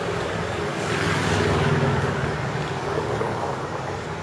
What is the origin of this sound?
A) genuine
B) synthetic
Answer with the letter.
B